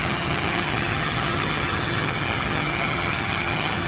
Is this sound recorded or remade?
remade